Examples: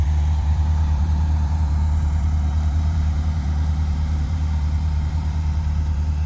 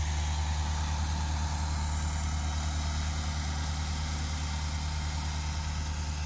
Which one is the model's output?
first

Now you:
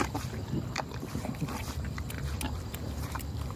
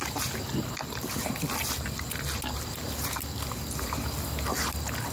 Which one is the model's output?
first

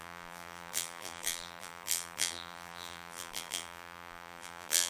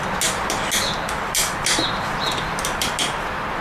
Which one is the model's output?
first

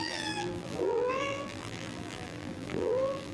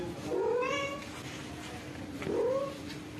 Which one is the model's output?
first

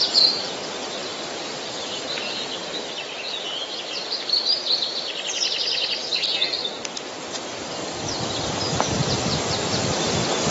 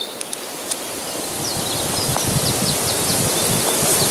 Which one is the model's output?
first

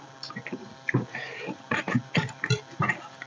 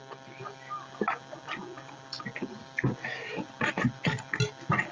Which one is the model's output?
first